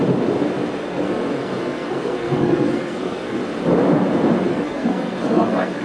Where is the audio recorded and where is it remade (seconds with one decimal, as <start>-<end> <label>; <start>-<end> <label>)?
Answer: 0.0-0.8 recorded; 0.8-3.4 remade; 3.4-4.5 recorded; 4.5-5.8 remade